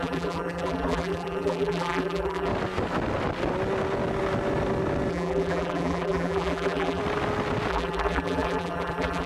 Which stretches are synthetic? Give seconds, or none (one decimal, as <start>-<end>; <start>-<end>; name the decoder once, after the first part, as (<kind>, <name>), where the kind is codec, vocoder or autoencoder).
0.0-2.5 (vocoder, BigVGAN v2); 5.1-7.0; 7.7-9.3